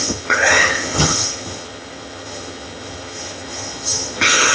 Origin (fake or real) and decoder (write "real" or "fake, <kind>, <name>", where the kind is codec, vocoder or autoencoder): fake, vocoder, HiFi-GAN